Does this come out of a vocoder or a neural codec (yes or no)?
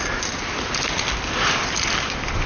no